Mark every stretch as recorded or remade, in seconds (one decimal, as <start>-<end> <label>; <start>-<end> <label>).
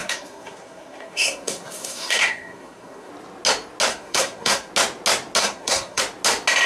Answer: 0.0-3.1 remade; 3.1-3.9 recorded; 3.9-4.7 remade; 4.7-5.4 recorded; 5.4-6.0 remade; 6.0-6.7 recorded